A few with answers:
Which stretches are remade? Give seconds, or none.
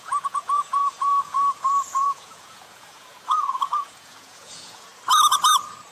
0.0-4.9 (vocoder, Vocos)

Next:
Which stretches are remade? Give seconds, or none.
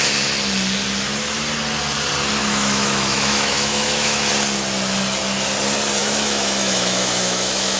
2.4-4.3 (autoencoder, DAC-VAE); 6.0-7.8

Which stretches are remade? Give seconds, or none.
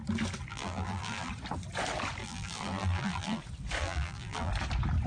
0.5-1.3 (vocoder, BigVGAN v2); 2.2-3.4; 3.8-4.5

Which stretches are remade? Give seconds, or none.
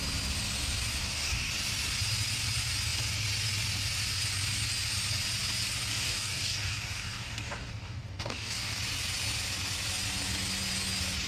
0.9-1.5 (codec, DAC); 5.9-8.8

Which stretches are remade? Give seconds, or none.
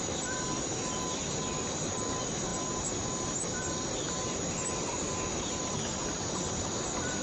none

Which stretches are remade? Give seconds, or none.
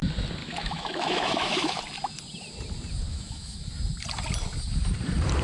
0.4-1.8 (autoencoder, DAC-VAE); 3.1-3.7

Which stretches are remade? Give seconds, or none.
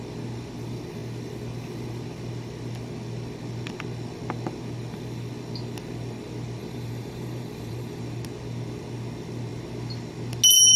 6.6-8.0 (vocoder, BigVGAN v2)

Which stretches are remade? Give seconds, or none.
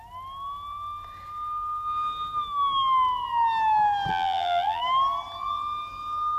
4.1-4.8 (vocoder, BigVGAN v2)